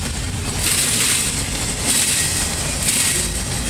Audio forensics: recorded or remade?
recorded